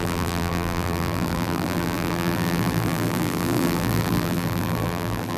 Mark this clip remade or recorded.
remade